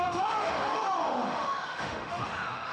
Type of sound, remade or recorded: remade